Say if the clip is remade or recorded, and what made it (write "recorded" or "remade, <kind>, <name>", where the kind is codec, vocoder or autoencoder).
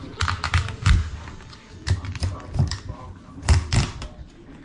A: recorded